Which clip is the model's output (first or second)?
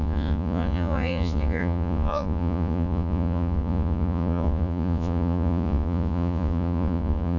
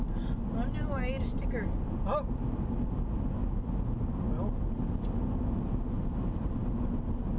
first